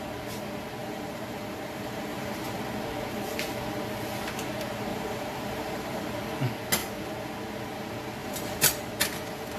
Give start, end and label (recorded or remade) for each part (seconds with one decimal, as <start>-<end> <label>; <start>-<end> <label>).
0.0-0.8 recorded; 0.8-2.6 remade; 2.6-4.9 recorded; 4.9-6.1 remade; 6.1-8.2 recorded; 8.2-8.9 remade; 8.9-9.6 recorded